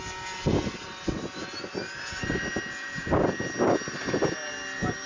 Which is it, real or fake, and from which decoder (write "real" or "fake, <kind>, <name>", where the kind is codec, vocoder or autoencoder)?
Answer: real